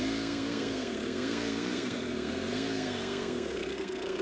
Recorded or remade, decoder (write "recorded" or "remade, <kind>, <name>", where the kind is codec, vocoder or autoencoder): remade, codec, SNAC